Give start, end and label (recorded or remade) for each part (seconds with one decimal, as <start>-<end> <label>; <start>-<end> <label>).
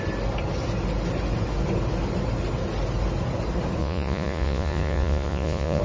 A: 0.0-3.8 recorded; 3.8-5.8 remade